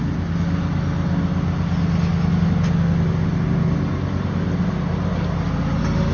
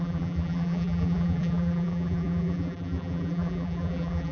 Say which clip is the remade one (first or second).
second